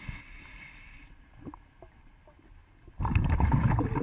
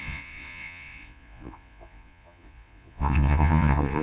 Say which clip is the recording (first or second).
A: first